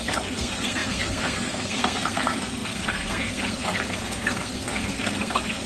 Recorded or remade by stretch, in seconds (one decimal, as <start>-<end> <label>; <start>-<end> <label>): 0.0-5.7 remade